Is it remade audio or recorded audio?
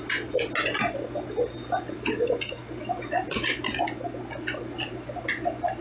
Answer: recorded